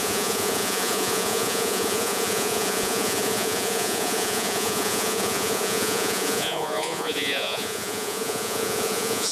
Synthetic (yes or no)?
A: yes